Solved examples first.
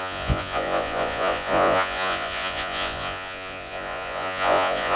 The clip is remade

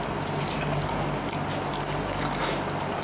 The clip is recorded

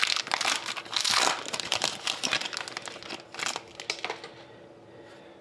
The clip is recorded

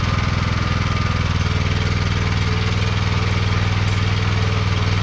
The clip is recorded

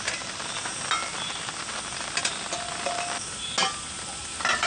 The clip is recorded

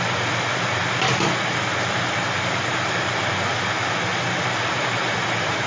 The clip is recorded